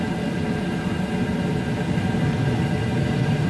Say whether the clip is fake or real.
real